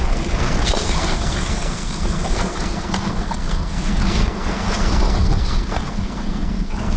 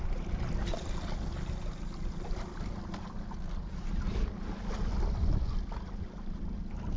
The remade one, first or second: first